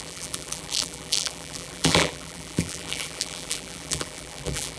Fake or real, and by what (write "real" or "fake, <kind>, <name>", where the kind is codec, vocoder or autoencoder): fake, vocoder, BigVGAN v2